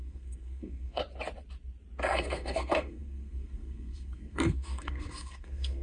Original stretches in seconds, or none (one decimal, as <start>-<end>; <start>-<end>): 1.0-2.0